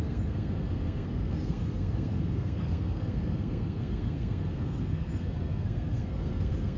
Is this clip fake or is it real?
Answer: fake